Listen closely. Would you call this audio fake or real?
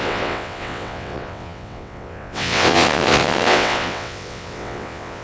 fake